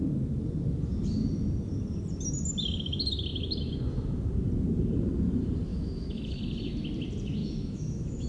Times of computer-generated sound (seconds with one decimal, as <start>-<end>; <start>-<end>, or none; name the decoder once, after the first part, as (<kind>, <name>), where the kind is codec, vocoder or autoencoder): 5.7-6.4 (autoencoder, DAC-VAE); 7.4-8.3